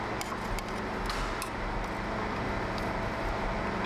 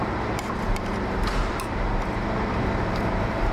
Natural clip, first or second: first